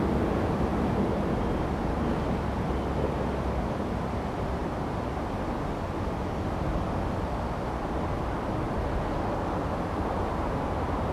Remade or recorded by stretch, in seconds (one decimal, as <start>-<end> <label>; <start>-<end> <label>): 0.0-11.1 recorded